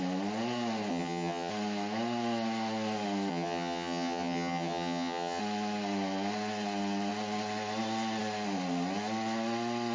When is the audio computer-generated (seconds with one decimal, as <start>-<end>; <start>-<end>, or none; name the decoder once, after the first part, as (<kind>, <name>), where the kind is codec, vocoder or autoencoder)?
0.9-1.5 (vocoder, HiFi-GAN); 3.3-5.4